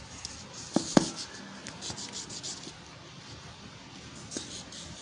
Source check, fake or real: real